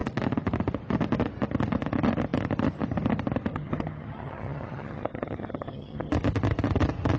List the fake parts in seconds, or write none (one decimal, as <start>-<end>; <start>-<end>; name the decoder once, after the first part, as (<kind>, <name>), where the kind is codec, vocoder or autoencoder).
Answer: 3.5-6.1 (vocoder, HiFi-GAN)